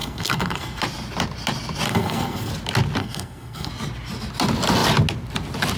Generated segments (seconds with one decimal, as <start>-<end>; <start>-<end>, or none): 0.0-0.8; 1.9-2.5; 3.0-3.7